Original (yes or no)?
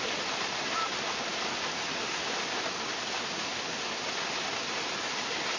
yes